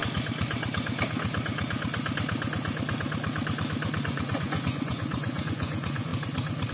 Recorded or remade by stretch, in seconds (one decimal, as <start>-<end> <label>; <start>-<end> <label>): 0.0-4.0 recorded; 4.0-6.1 remade; 6.1-6.7 recorded

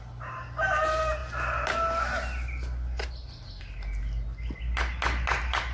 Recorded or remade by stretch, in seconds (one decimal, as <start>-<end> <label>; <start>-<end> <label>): 0.0-5.7 recorded

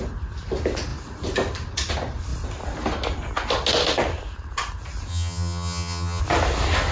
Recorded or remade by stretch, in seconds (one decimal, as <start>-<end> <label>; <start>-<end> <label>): 0.0-5.1 recorded; 5.1-6.2 remade; 6.2-6.9 recorded